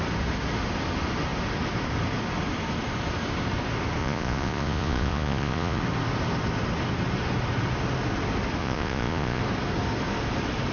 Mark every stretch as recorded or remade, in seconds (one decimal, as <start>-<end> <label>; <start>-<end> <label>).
0.0-4.0 recorded; 4.0-5.8 remade; 5.8-8.6 recorded; 8.6-9.4 remade; 9.4-10.7 recorded

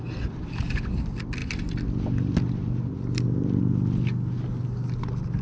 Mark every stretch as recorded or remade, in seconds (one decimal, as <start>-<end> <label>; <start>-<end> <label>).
0.0-5.4 recorded

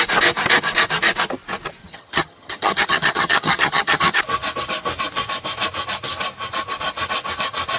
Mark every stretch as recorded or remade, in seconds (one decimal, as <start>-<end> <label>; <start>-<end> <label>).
0.0-1.8 recorded; 1.8-4.2 remade; 4.2-7.8 recorded

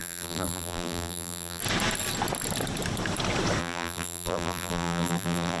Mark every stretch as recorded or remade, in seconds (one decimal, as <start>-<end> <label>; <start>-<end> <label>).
0.0-1.6 remade; 1.6-3.6 recorded; 3.6-5.6 remade